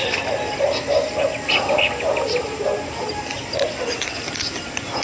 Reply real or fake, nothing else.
real